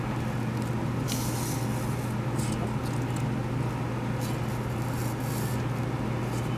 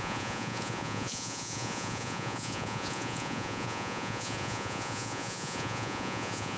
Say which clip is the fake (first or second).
second